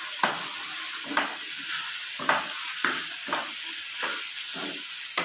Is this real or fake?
real